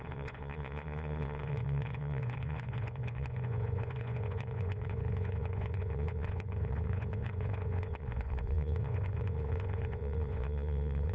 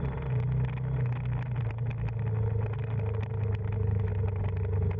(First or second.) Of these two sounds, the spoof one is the first